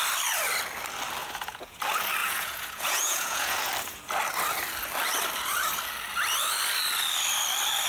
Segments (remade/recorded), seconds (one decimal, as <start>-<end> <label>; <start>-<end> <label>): 0.0-1.2 recorded; 1.2-1.8 remade; 1.8-2.2 recorded; 2.2-3.7 remade; 3.7-7.9 recorded